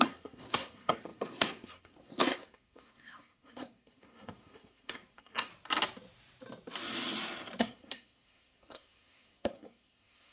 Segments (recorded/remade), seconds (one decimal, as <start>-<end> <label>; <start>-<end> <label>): 0.0-5.5 remade; 5.5-7.6 recorded; 7.6-10.3 remade